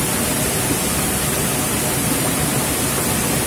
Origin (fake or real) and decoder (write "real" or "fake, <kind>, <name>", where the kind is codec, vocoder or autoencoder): real